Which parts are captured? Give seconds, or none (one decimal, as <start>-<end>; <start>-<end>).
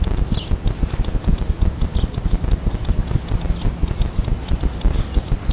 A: 0.0-5.5